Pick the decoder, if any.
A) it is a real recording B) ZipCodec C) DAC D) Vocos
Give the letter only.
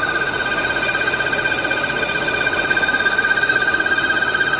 D